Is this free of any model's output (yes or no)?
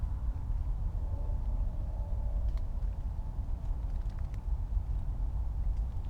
yes